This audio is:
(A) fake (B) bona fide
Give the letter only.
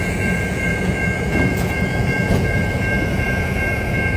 A